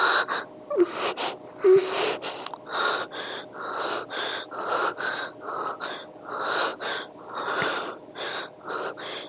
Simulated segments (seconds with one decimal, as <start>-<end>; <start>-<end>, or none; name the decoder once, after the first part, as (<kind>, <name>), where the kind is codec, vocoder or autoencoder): 6.7-8.3 (vocoder, BigVGAN v2)